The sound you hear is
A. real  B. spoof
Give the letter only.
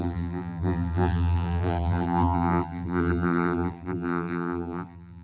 B